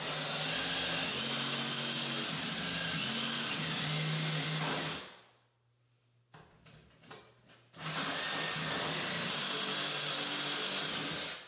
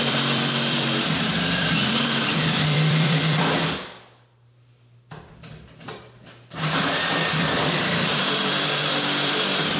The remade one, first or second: second